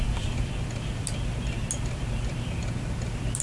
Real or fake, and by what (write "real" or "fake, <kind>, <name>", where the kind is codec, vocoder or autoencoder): fake, vocoder, BigVGAN v2